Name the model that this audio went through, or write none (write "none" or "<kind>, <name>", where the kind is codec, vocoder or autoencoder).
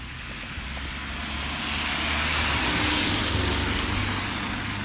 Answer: none